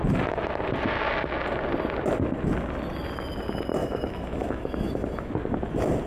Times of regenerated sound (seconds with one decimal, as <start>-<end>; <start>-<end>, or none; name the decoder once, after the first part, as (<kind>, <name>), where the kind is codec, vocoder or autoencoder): 3.8-5.3 (autoencoder, DAC-VAE)